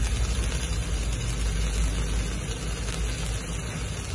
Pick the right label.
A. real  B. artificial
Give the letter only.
A